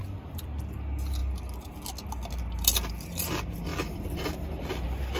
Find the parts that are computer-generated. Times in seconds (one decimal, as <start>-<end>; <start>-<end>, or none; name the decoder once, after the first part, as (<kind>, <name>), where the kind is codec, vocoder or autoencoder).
0.0-0.6 (vocoder, BigVGAN v2)